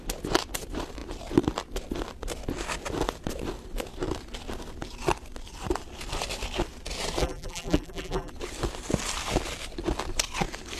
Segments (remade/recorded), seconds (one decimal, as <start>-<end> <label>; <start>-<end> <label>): 0.0-7.2 recorded; 7.2-8.3 remade; 8.3-10.8 recorded